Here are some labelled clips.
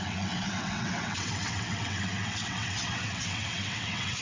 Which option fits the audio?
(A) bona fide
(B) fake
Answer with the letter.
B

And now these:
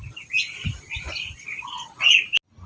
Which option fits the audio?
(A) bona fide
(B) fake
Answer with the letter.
A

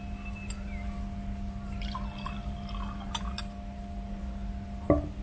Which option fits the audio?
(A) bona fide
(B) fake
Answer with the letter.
A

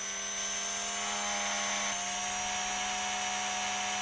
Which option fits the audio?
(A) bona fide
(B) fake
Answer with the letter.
A